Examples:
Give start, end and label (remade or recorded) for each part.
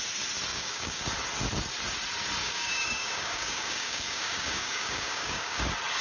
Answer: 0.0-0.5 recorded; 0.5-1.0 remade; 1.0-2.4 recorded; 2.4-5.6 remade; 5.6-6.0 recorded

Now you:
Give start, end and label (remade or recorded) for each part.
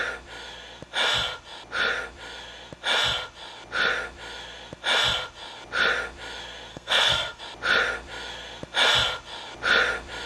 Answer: 0.0-6.7 recorded; 6.7-7.4 remade; 7.4-10.3 recorded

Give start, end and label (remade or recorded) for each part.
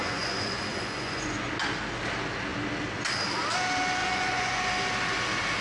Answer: 0.0-1.5 remade; 1.5-4.0 recorded; 4.0-4.6 remade; 4.6-5.6 recorded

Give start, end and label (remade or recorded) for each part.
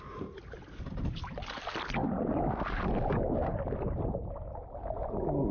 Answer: 0.0-5.5 recorded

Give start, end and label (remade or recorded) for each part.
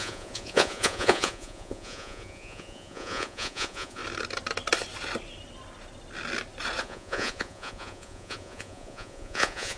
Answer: 0.0-4.0 remade; 4.0-6.8 recorded; 6.8-9.8 remade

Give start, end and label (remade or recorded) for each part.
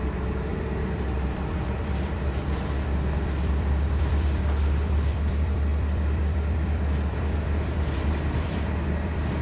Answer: 0.0-9.4 remade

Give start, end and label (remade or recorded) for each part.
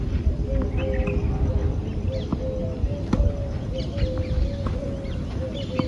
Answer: 0.0-5.9 recorded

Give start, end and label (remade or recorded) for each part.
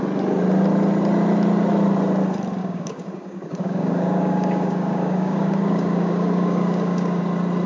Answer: 0.0-2.6 recorded; 2.6-7.2 remade; 7.2-7.7 recorded